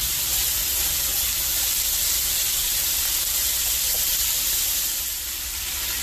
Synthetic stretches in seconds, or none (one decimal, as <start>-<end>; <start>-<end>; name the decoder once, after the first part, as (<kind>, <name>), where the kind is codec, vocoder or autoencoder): none